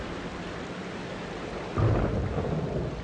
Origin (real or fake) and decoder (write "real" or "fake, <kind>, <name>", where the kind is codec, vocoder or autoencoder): real